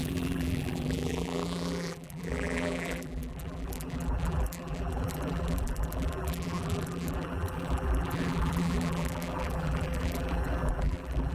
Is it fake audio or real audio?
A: fake